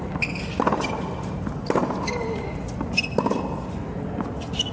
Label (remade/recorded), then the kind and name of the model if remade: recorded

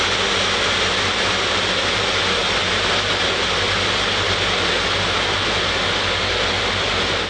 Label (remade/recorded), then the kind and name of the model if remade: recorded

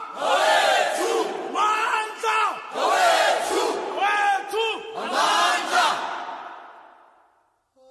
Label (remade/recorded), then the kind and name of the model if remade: recorded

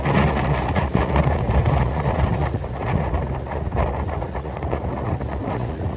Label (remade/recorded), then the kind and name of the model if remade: remade, vocoder, Vocos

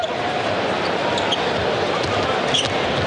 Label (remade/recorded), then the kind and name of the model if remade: recorded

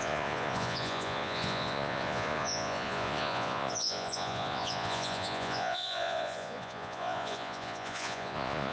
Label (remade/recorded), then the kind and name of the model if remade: remade, vocoder, Vocos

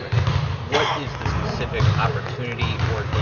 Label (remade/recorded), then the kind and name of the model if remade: recorded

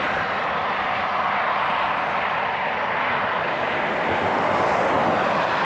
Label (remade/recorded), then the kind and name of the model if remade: recorded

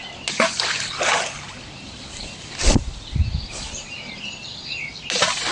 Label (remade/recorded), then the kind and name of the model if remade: recorded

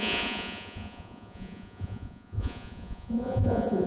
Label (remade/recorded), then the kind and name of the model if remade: remade, vocoder, Vocos